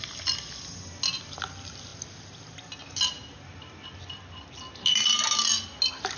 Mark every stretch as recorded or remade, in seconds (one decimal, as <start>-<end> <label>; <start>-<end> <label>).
0.0-6.2 recorded